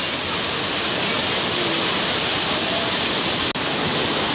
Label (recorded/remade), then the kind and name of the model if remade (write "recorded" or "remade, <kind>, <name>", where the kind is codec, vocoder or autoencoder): recorded